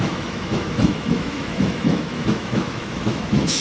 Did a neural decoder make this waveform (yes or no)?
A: yes